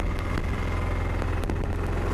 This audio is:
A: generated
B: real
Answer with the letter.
B